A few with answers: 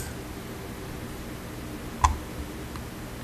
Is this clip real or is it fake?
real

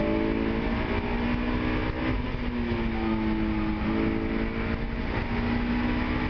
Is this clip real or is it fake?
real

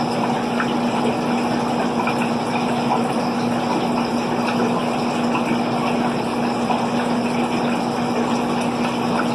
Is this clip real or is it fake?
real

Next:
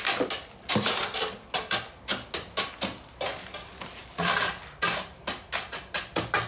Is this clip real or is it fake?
real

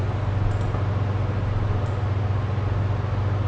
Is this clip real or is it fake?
real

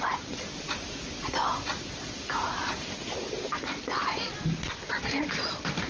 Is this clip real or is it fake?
real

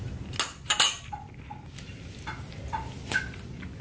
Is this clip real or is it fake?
real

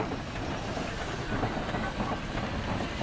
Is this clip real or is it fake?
real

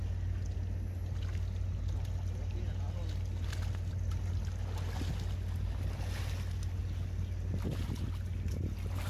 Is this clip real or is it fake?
real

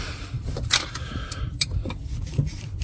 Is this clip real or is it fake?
fake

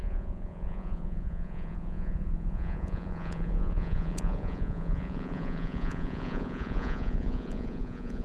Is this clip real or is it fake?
fake